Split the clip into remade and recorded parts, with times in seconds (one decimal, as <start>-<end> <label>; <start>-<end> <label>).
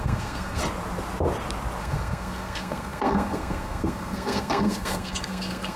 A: 0.0-0.6 remade; 0.6-1.8 recorded; 1.8-5.8 remade